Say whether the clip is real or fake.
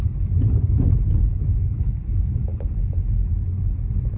real